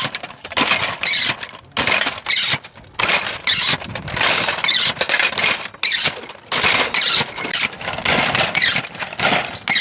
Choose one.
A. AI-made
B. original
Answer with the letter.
B